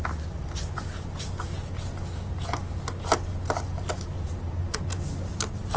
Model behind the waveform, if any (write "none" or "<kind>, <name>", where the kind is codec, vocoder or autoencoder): none